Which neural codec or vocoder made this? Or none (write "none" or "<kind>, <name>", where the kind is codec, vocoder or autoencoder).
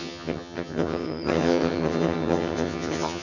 vocoder, HiFi-GAN